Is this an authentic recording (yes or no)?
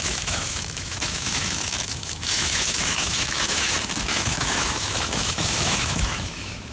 no